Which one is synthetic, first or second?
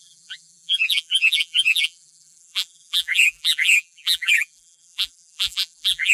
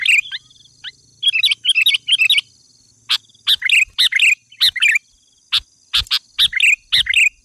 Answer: first